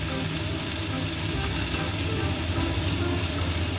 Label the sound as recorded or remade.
recorded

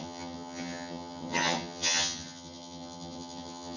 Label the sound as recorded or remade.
remade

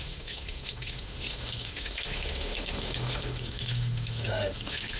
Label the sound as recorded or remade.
remade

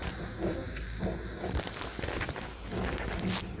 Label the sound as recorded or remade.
remade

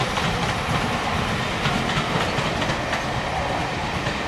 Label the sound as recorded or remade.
recorded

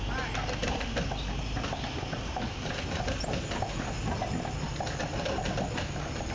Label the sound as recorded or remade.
recorded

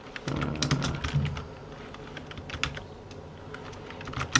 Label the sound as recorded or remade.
recorded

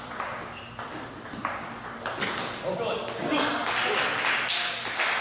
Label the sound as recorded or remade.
recorded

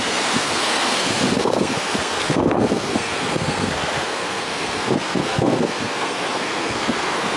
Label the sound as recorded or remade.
remade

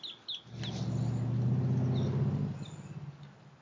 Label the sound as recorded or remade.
recorded